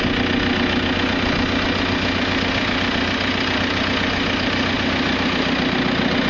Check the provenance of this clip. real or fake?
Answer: real